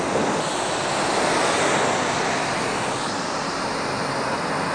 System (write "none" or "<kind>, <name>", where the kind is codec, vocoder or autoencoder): none